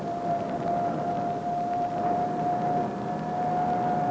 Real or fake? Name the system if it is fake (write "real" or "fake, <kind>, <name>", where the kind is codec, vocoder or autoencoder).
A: real